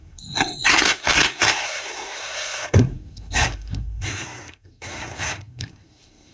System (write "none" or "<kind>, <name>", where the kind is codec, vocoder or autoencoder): codec, SNAC